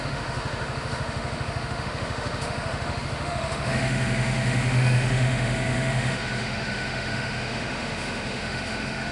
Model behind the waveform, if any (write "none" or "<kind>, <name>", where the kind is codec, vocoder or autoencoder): autoencoder, DAC-VAE